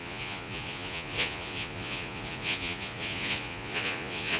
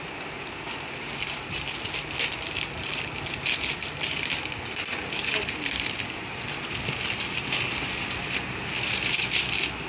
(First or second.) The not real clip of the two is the first